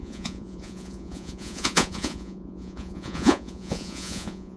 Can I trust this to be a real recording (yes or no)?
no